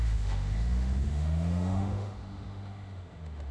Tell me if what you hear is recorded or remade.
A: remade